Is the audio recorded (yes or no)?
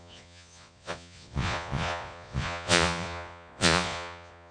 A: no